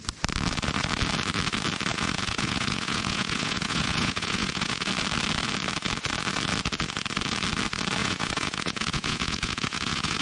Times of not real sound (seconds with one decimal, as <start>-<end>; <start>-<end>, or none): 1.9-4.9; 8.0-10.2